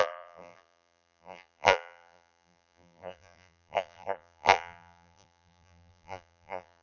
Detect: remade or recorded remade